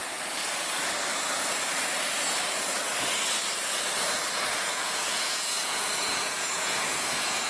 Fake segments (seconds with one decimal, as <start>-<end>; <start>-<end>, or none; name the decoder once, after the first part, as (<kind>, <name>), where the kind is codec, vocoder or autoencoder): 4.5-7.5 (vocoder, Vocos)